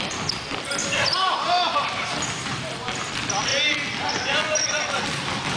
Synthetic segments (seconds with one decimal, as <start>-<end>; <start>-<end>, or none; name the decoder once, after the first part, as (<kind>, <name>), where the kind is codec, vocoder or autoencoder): 0.8-2.7 (vocoder, BigVGAN v2)